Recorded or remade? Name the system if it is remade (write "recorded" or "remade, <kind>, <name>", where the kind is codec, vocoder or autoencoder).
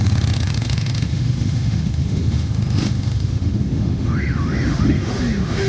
remade, autoencoder, DAC-VAE